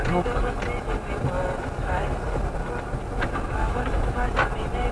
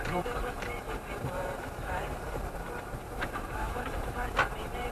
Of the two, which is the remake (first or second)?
second